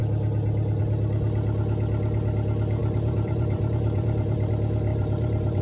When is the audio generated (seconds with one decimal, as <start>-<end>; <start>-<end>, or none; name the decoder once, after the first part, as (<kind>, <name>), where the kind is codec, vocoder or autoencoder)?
2.8-4.5 (vocoder, BigVGAN v2); 4.9-5.6